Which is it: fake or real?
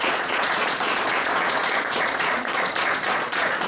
fake